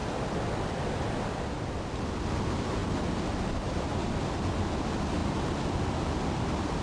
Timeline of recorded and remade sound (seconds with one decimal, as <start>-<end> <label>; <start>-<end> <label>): 0.0-6.8 recorded